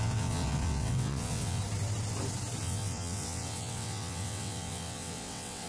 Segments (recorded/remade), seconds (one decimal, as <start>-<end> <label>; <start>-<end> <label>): 0.0-1.6 remade; 1.6-2.6 recorded; 2.6-5.7 remade